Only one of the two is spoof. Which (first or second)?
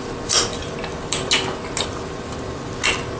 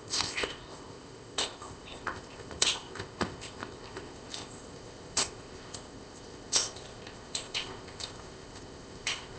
second